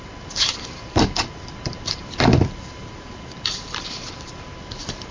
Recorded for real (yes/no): no